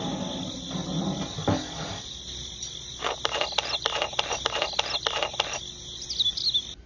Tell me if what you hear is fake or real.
real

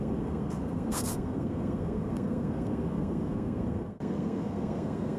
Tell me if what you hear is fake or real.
fake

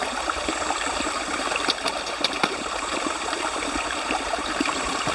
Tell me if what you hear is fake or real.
fake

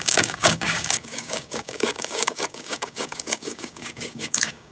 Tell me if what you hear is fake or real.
fake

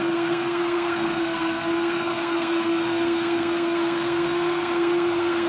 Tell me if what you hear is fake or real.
fake